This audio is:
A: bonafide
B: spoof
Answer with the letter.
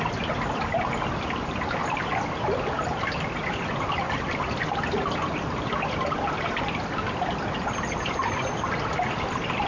A